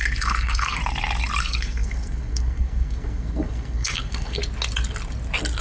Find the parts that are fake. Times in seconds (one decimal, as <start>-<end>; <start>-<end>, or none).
0.0-0.8; 1.4-4.4